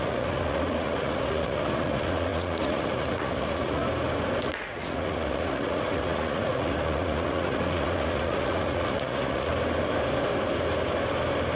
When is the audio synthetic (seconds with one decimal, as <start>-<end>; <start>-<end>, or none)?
0.0-3.8; 4.4-9.5